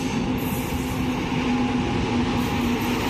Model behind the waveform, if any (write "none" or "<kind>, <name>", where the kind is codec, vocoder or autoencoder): none